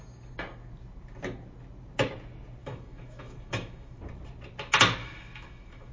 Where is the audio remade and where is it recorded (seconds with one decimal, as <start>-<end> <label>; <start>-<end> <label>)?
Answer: 0.0-2.6 recorded; 2.6-4.0 remade; 4.0-5.0 recorded; 5.0-5.9 remade